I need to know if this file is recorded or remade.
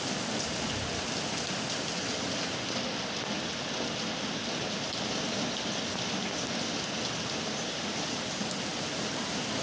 recorded